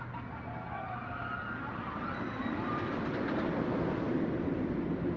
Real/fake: real